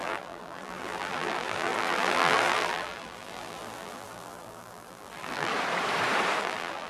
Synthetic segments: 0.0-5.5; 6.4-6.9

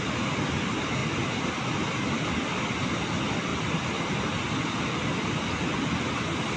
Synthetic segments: 1.0-1.5

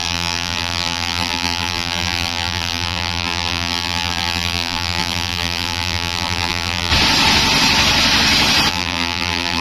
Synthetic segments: 0.0-6.9; 8.7-9.6

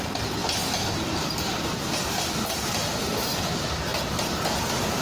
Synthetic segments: none

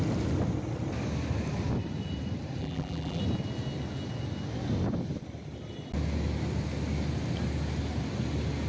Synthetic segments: 2.6-3.2

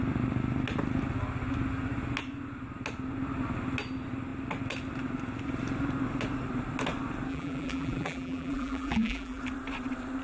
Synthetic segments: 7.3-9.4

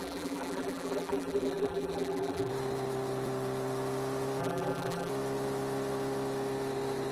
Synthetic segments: 0.0-2.5; 4.4-5.1